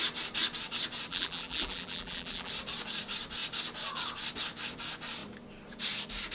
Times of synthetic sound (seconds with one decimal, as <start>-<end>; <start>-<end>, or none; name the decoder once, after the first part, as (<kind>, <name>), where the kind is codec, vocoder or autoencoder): 1.1-2.5 (vocoder, BigVGAN v2)